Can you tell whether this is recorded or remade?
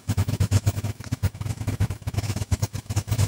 remade